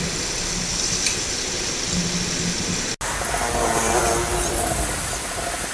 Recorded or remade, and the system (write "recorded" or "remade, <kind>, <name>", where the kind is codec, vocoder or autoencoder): recorded